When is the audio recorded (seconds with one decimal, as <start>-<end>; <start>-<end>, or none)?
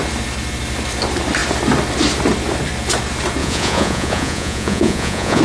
0.0-3.4